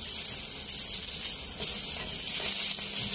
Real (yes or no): yes